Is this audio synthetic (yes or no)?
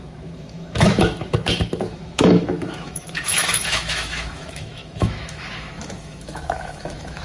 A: yes